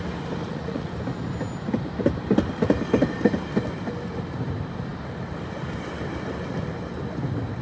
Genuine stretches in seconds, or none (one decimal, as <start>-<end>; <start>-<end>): 0.0-0.4; 0.9-7.6